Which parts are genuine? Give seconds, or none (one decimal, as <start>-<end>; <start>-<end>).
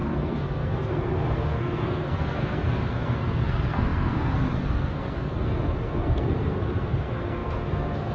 none